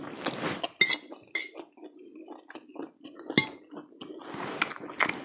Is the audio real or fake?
real